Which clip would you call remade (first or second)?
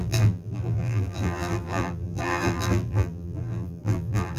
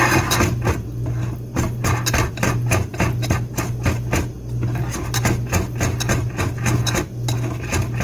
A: first